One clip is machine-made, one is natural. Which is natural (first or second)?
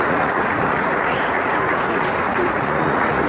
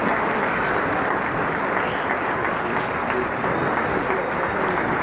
second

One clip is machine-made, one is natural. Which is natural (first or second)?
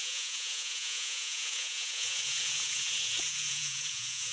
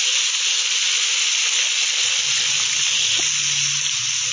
second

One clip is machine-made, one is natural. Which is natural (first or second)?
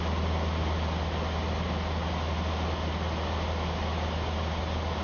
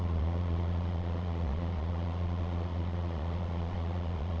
first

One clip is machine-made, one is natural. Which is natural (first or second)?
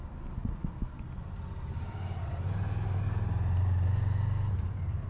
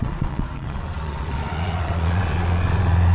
first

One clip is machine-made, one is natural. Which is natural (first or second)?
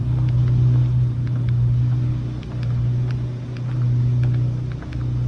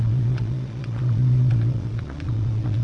first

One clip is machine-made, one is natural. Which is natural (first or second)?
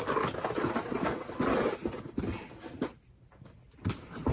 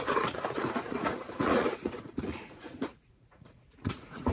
first